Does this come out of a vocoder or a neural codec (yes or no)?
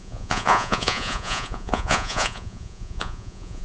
yes